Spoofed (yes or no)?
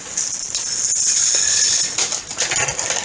no